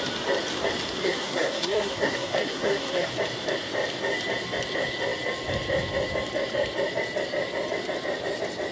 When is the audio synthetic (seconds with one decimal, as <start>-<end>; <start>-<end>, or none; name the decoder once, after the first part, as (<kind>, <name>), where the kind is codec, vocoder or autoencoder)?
1.0-3.1 (codec, SNAC)